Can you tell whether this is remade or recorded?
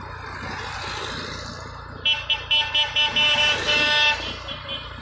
recorded